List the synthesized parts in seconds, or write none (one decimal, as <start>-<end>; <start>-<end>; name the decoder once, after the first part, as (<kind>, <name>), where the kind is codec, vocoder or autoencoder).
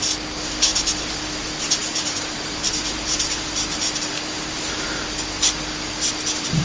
0.7-4.7 (vocoder, BigVGAN v2)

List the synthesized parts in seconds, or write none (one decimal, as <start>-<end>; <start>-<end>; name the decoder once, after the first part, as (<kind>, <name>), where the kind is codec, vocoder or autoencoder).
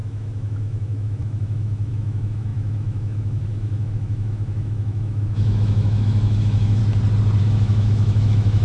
0.0-6.8 (autoencoder, DAC-VAE); 7.4-8.6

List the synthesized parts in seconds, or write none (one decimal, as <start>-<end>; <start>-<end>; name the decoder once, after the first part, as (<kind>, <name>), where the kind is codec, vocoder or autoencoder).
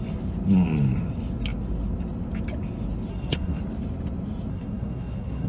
3.1-3.6 (codec, SNAC); 4.5-5.5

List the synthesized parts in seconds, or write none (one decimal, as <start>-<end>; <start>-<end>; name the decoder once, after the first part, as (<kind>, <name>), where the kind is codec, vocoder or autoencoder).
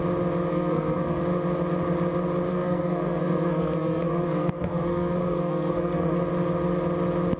0.5-1.2 (codec, SNAC); 2.5-6.2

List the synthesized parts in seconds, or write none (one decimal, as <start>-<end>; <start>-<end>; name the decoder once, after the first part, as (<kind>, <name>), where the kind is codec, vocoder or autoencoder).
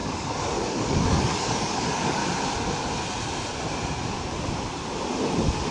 0.0-2.2 (codec, DAC)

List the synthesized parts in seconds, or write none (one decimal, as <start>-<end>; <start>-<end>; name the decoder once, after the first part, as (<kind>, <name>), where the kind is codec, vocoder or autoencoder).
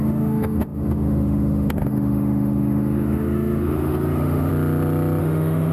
0.0-4.5 (autoencoder, DAC-VAE); 5.2-5.7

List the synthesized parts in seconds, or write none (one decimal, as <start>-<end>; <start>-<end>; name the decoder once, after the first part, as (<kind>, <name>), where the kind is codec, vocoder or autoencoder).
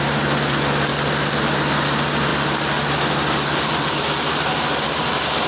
none